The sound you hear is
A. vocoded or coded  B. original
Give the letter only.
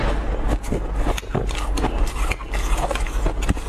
B